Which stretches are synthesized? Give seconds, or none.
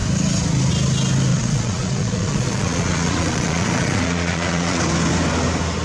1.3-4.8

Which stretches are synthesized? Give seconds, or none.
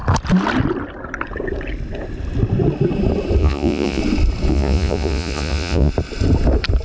3.4-4.0; 4.5-5.9